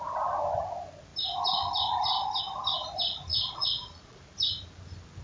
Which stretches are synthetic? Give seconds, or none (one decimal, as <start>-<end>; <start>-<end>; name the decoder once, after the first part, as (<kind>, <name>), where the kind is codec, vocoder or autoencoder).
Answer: 3.3-4.2 (vocoder, Vocos)